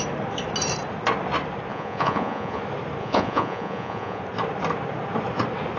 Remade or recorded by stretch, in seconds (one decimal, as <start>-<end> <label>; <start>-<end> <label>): 0.0-1.7 recorded; 1.7-2.6 remade; 2.6-3.0 recorded; 3.0-4.2 remade; 4.2-5.8 recorded